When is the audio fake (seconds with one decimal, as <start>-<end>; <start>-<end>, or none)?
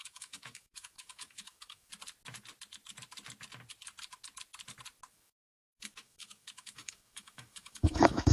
0.0-1.9; 5.1-8.3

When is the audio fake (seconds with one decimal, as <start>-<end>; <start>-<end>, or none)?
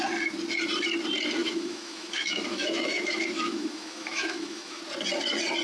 1.4-4.8